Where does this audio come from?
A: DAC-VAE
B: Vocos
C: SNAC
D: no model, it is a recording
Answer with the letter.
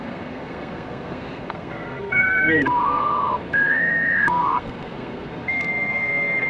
C